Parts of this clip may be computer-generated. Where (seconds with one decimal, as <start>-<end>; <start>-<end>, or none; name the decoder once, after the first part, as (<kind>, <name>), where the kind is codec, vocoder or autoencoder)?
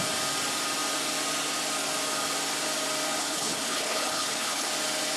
3.2-4.7 (codec, HILCodec)